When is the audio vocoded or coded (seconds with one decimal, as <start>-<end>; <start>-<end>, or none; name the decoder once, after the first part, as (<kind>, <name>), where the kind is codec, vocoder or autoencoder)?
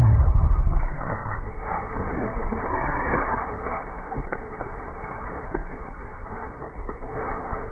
0.0-7.7 (codec, SNAC)